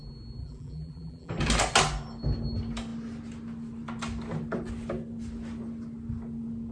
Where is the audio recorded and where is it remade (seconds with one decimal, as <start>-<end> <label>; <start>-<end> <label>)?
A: 0.0-0.4 recorded; 0.4-1.3 remade; 1.3-6.7 recorded